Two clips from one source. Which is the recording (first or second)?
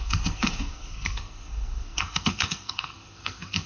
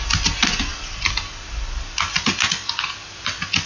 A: second